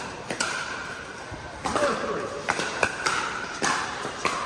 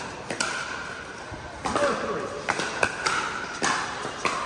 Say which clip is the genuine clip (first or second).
second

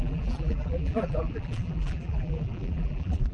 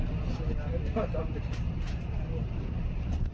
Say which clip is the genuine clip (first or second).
second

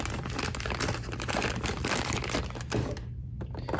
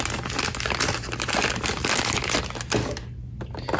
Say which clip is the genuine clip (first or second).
second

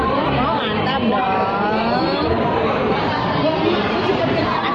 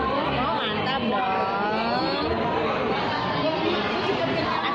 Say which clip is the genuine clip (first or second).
second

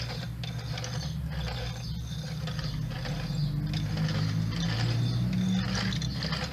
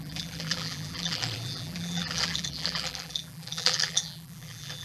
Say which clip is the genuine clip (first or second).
first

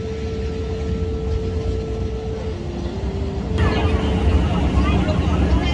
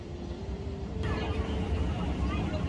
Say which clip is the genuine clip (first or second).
first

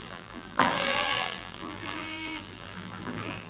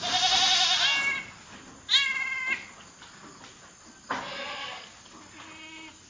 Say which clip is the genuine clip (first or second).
second